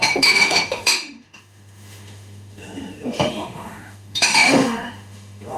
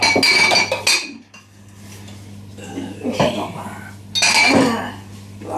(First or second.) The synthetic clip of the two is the first